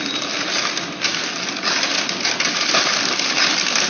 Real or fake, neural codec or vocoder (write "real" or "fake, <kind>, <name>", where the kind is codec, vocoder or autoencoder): real